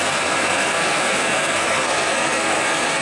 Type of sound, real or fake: fake